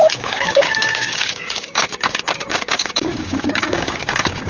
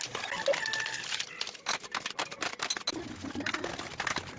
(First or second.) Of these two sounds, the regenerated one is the first